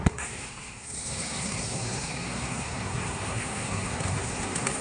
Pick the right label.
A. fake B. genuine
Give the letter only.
A